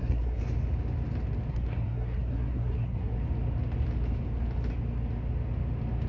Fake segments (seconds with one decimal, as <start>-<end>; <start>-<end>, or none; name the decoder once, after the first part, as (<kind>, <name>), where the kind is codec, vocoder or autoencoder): 0.0-0.4 (codec, SNAC); 1.5-3.2